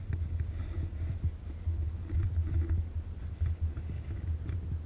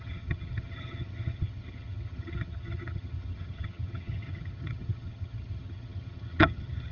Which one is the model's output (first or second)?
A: second